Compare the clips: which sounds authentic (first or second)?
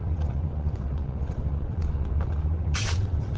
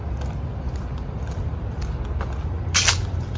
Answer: second